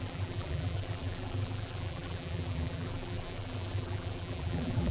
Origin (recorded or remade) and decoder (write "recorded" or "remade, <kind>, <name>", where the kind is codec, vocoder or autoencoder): remade, vocoder, BigVGAN v2